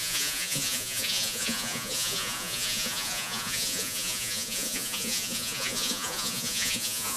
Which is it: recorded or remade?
remade